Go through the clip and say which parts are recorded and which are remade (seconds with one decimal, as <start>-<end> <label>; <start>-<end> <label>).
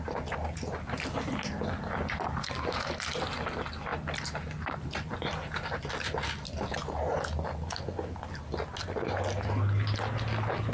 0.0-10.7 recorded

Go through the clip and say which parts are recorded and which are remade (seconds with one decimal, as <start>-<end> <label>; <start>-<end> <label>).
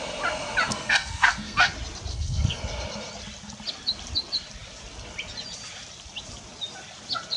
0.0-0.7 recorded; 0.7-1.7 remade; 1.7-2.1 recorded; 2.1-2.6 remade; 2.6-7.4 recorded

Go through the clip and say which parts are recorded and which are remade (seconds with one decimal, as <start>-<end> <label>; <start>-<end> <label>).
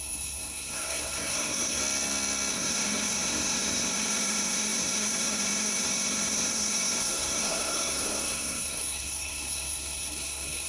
0.0-1.8 remade; 1.8-2.5 recorded; 2.5-10.7 remade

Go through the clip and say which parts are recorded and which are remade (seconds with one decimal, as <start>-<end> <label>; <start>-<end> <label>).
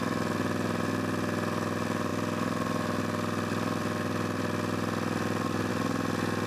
0.0-6.5 recorded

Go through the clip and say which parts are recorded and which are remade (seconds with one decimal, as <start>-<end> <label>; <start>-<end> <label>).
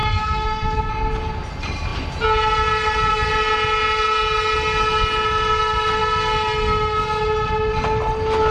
0.0-0.9 remade; 0.9-8.5 recorded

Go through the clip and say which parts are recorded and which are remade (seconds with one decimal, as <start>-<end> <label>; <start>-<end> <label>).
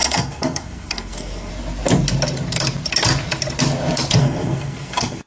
0.0-1.5 remade; 1.5-4.2 recorded; 4.2-5.3 remade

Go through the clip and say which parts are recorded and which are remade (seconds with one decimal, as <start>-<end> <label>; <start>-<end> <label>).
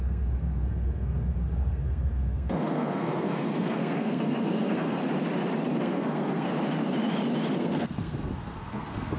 0.0-5.0 remade; 5.0-5.8 recorded; 5.8-6.5 remade; 6.5-7.6 recorded; 7.6-9.2 remade